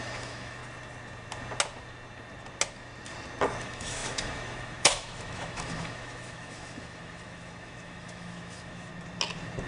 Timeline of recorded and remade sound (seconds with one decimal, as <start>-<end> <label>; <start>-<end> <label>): 0.0-0.6 remade; 0.6-3.6 recorded; 3.6-8.9 remade; 8.9-9.7 recorded